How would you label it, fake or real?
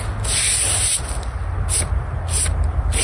real